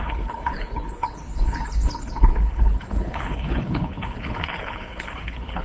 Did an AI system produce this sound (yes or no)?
yes